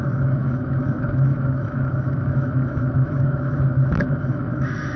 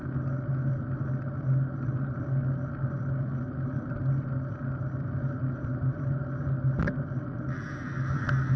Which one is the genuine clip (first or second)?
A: second